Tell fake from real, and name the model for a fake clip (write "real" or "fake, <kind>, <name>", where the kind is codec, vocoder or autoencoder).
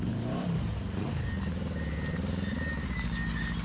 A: real